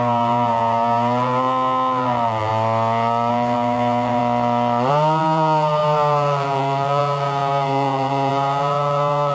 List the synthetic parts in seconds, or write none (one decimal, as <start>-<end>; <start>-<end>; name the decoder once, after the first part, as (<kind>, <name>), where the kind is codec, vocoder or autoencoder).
0.0-2.5 (vocoder, BigVGAN v2); 3.3-4.2; 4.9-9.3